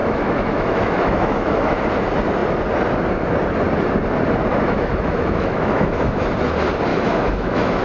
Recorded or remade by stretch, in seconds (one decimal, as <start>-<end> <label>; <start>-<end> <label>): 0.0-1.8 remade; 1.8-4.5 recorded; 4.5-6.2 remade; 6.2-6.9 recorded; 6.9-7.8 remade